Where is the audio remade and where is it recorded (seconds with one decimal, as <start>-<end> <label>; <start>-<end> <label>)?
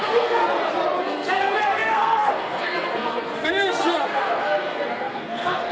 0.0-0.4 remade; 0.4-1.0 recorded; 1.0-5.7 remade